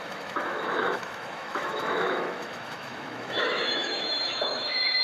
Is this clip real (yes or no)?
no